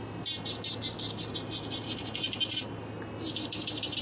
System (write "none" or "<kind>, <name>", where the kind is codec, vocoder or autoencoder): none